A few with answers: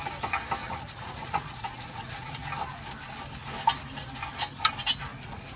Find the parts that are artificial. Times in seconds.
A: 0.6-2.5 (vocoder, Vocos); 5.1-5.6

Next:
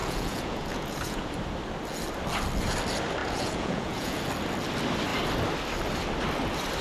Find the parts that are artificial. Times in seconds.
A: 0.0-1.3 (vocoder, Vocos); 3.2-4.2